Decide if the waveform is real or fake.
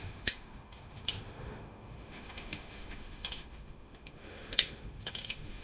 fake